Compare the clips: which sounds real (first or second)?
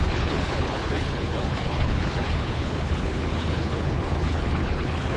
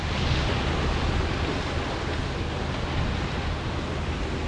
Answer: second